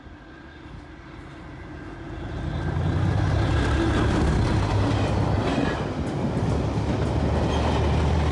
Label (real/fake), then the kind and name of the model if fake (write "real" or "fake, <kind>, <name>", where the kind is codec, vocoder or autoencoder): real